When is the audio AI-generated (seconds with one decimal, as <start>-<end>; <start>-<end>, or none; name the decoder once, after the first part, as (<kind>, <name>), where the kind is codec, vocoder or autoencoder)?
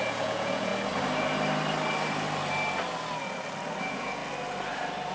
0.0-0.7 (vocoder, Vocos); 3.8-4.2